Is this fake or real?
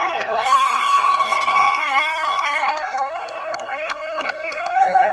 fake